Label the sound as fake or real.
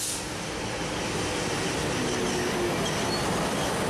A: real